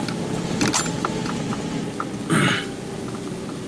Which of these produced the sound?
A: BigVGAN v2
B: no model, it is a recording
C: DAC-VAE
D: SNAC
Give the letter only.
B